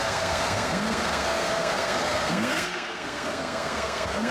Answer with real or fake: fake